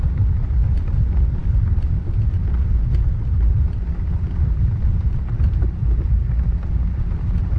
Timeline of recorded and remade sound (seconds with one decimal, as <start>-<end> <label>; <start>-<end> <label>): 0.0-7.6 recorded

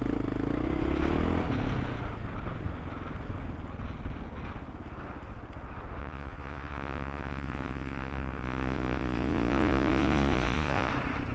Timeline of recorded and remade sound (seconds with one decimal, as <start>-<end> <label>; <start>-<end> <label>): 0.0-6.0 recorded; 6.0-10.9 remade; 10.9-11.3 recorded

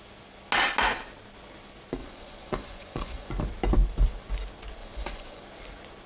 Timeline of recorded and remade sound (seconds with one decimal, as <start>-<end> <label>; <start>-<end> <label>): 0.0-2.0 recorded; 2.0-3.3 remade; 3.3-4.8 recorded; 4.8-5.4 remade; 5.4-6.1 recorded

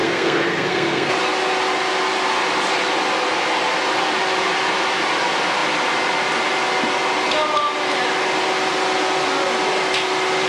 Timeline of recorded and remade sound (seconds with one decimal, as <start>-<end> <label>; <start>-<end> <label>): 0.0-1.1 remade; 1.1-10.5 recorded